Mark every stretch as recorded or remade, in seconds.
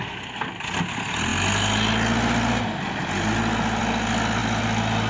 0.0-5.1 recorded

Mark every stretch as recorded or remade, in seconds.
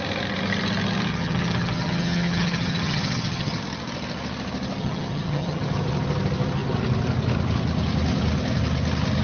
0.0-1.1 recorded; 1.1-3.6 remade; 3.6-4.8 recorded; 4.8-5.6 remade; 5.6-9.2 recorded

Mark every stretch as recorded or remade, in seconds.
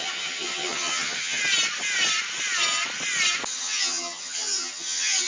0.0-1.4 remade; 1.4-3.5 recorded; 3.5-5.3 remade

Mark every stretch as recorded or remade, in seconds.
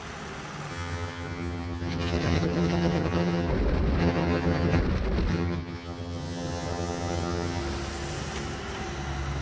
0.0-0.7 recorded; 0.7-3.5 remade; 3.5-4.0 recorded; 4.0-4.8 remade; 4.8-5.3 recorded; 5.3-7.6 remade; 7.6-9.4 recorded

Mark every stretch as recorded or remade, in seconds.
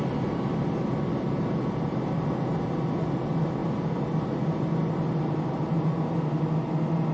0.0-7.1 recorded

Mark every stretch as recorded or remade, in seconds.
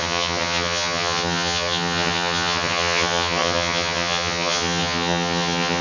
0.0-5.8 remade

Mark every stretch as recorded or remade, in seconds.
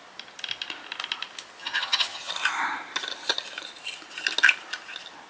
0.0-1.6 recorded; 1.6-2.3 remade; 2.3-5.3 recorded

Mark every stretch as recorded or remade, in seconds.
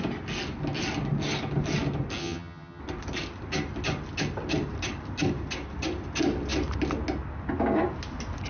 0.0-2.2 recorded; 2.2-2.8 remade; 2.8-8.5 recorded